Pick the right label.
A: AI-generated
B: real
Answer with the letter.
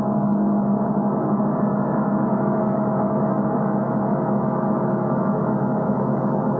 A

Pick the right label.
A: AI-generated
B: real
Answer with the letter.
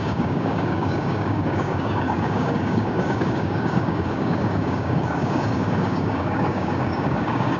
A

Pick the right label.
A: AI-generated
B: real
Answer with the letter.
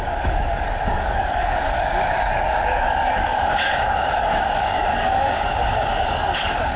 A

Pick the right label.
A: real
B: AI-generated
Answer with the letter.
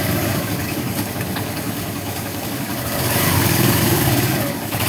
B